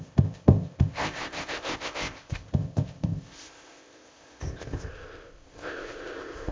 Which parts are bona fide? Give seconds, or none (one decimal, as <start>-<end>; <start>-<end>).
none